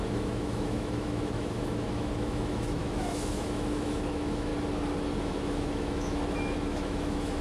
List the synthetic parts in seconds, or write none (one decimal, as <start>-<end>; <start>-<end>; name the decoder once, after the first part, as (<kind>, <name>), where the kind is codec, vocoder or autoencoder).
0.0-4.5 (autoencoder, DAC-VAE); 5.2-7.4